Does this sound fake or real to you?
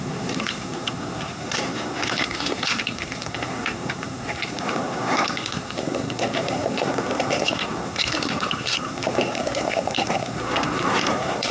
fake